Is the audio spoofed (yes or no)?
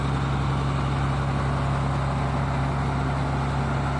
no